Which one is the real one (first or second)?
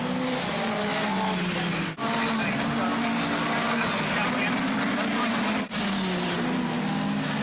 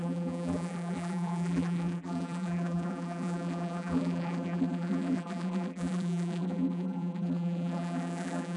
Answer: first